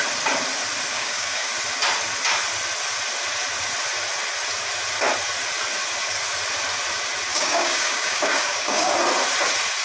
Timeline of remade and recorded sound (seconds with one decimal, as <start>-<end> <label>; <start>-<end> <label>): 0.0-0.9 recorded; 0.9-1.5 remade; 1.5-7.3 recorded; 7.3-8.9 remade; 8.9-9.8 recorded